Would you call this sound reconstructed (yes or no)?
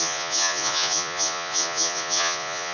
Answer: yes